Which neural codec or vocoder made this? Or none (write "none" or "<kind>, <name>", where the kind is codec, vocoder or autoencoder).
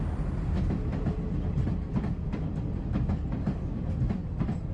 vocoder, BigVGAN v2